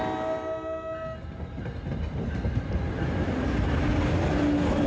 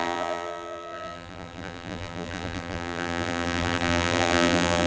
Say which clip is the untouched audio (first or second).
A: first